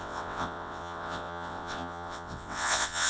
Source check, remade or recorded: remade